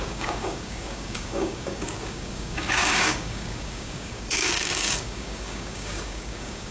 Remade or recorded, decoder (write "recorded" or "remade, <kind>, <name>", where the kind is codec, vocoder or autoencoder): remade, codec, DAC